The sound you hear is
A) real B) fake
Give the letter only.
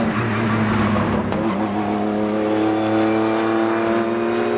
A